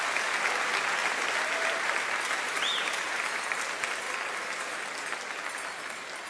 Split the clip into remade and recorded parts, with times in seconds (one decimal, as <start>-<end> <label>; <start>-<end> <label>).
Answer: 0.0-1.0 recorded; 1.0-4.8 remade; 4.8-6.3 recorded